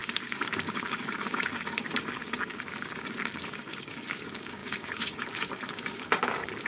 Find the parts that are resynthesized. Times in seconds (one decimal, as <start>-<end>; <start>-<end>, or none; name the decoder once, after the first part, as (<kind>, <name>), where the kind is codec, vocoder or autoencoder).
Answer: 0.0-6.7 (codec, DAC)